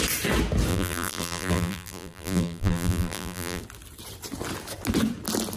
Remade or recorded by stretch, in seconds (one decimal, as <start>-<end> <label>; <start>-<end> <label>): 0.0-0.7 recorded; 0.7-3.6 remade; 3.6-5.6 recorded

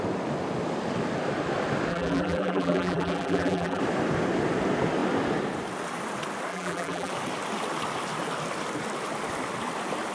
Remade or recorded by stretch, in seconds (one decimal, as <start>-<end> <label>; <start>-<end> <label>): 0.0-1.9 recorded; 1.9-3.8 remade; 3.8-6.5 recorded; 6.5-7.1 remade; 7.1-10.1 recorded

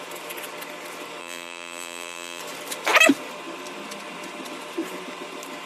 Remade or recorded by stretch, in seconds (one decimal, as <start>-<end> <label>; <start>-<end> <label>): 0.0-1.2 recorded; 1.2-2.4 remade; 2.4-5.7 recorded

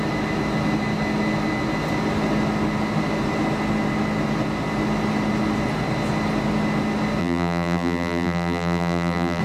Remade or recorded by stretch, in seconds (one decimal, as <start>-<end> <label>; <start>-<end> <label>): 0.0-7.2 recorded; 7.2-9.4 remade

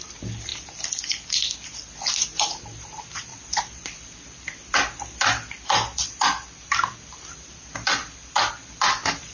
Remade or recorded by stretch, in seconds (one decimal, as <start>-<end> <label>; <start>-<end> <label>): 0.0-3.3 recorded; 3.3-7.6 remade; 7.6-8.0 recorded; 8.0-8.5 remade; 8.5-9.3 recorded